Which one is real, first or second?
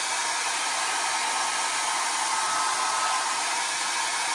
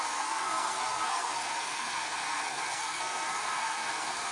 first